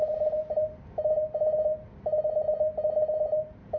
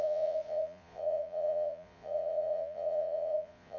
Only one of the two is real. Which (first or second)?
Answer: first